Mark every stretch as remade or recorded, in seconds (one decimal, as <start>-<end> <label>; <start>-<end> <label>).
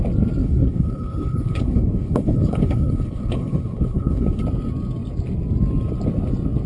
0.0-0.4 recorded; 0.4-4.4 remade; 4.4-6.7 recorded